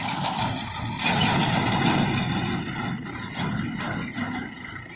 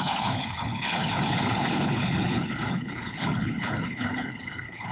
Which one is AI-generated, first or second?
second